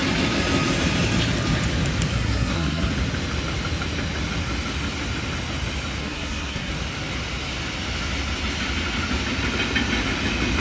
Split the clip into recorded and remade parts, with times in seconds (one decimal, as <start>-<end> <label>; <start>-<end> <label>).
0.0-2.1 recorded; 2.1-2.9 remade; 2.9-6.0 recorded; 6.0-6.7 remade; 6.7-10.6 recorded

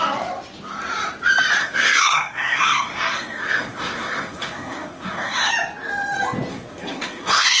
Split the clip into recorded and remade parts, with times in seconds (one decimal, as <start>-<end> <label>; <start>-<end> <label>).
0.0-1.6 recorded; 1.6-5.5 remade; 5.5-6.5 recorded; 6.5-7.6 remade

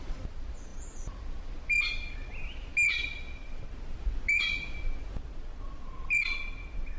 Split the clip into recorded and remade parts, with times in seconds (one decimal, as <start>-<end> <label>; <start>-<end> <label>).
0.0-7.0 recorded

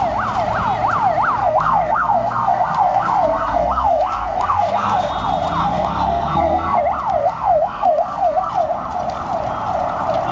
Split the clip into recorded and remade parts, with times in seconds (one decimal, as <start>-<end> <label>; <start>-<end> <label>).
0.0-1.4 recorded; 1.4-5.1 remade; 5.1-5.6 recorded; 5.6-6.8 remade; 6.8-7.2 recorded; 7.2-8.5 remade; 8.5-10.3 recorded

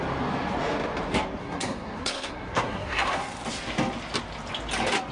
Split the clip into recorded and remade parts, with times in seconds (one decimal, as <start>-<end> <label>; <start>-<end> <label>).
0.0-1.4 recorded; 1.4-3.2 remade; 3.2-5.1 recorded

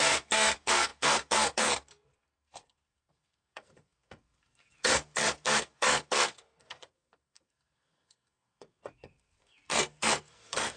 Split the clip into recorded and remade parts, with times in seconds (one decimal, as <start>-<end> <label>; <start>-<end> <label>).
0.0-10.8 remade

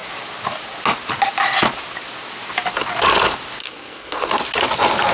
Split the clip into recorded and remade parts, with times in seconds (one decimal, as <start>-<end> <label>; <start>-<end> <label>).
0.0-3.6 recorded; 3.6-4.3 remade; 4.3-5.1 recorded

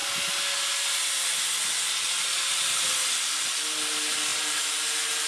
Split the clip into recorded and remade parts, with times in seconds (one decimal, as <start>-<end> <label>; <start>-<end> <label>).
0.0-5.3 recorded